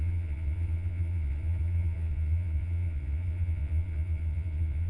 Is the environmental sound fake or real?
fake